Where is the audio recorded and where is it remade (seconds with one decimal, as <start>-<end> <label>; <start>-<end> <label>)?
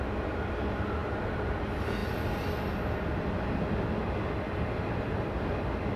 0.0-6.0 recorded